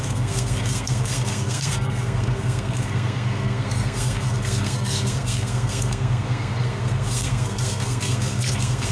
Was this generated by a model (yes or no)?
yes